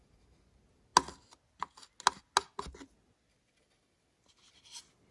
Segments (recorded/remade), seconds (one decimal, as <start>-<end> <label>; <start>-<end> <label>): 0.0-5.1 recorded